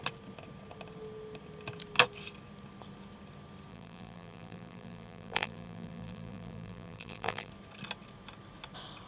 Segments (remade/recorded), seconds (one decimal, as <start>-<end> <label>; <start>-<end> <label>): 0.0-3.7 recorded; 3.7-7.5 remade; 7.5-9.1 recorded